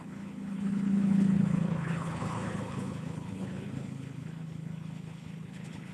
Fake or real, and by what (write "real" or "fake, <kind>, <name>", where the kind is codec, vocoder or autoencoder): fake, codec, HILCodec